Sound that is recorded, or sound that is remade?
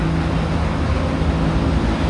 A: recorded